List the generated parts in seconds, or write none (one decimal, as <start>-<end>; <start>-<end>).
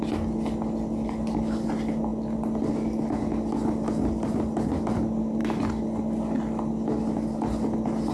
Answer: none